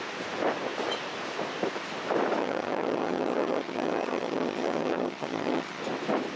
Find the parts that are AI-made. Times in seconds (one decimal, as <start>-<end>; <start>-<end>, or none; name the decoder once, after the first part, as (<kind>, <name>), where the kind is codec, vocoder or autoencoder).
2.4-5.8 (vocoder, HiFi-GAN)